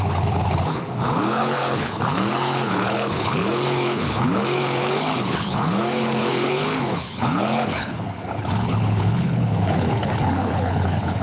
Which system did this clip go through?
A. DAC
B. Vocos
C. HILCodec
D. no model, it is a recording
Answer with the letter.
C